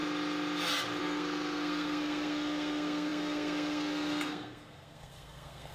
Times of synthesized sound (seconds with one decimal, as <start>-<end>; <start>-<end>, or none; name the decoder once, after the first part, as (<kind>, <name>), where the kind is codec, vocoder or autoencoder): 1.0-5.7 (codec, SNAC)